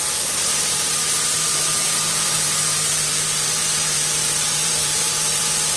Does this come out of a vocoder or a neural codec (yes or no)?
yes